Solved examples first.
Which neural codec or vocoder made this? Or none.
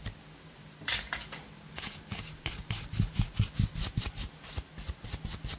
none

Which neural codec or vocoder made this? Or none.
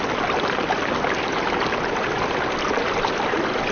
none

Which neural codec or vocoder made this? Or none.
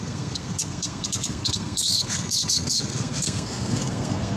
codec, SNAC